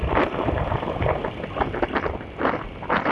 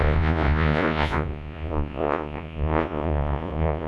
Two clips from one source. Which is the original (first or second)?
first